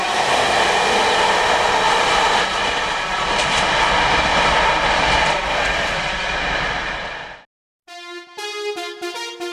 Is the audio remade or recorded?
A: recorded